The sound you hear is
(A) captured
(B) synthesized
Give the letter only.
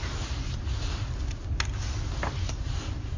A